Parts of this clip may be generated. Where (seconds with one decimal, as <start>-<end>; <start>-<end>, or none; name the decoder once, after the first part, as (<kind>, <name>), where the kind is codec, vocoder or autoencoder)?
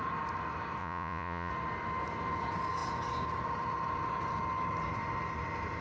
0.8-1.5 (vocoder, Vocos)